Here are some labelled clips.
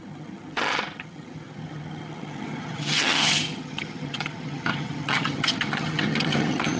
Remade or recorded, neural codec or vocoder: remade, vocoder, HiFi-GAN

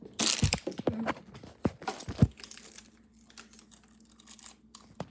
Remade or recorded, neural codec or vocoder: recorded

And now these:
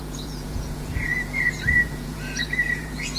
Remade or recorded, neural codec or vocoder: remade, vocoder, Vocos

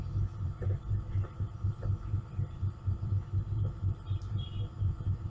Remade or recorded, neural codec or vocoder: remade, vocoder, BigVGAN v2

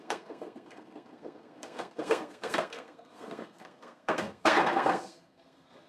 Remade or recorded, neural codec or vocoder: remade, codec, SNAC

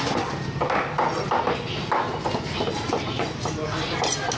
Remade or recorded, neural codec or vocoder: recorded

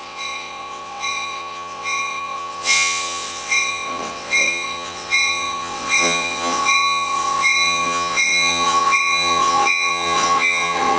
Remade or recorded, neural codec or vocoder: remade, vocoder, WaveNeXt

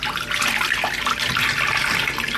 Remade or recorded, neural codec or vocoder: recorded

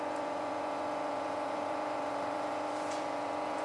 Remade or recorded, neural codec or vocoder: remade, vocoder, Vocos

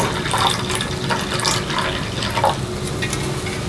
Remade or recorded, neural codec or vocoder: recorded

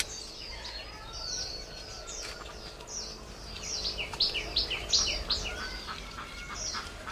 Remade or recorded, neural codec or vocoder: recorded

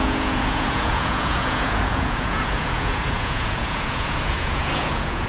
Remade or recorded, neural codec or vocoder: remade, vocoder, Vocos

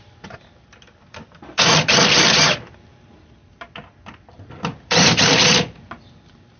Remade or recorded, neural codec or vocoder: remade, vocoder, BigVGAN v2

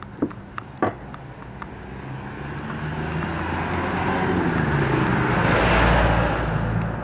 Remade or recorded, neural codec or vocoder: recorded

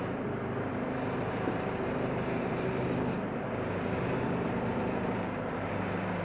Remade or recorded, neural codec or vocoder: remade, vocoder, BigVGAN v2